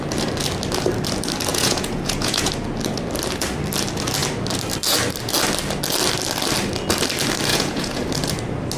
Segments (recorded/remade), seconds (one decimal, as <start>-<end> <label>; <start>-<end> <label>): 0.0-1.5 recorded; 1.5-2.5 remade; 2.5-7.5 recorded; 7.5-8.0 remade; 8.0-8.8 recorded